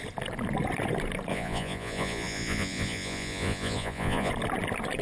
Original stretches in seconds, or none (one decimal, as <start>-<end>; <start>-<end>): 0.0-1.3; 4.3-5.0